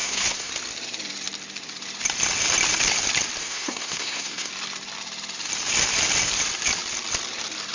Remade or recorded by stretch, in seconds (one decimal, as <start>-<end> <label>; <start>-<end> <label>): 0.0-0.5 remade; 0.5-3.4 recorded; 3.4-4.5 remade; 4.5-7.7 recorded